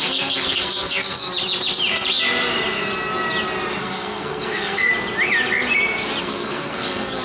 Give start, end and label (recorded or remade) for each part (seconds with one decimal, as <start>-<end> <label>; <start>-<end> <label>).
0.0-1.3 remade; 1.3-3.8 recorded; 3.8-4.9 remade; 4.9-6.2 recorded; 6.2-7.2 remade